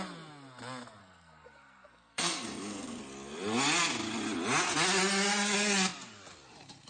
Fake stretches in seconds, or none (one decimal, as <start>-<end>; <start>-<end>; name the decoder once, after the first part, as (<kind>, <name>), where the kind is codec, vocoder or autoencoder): 1.0-3.0 (codec, SNAC)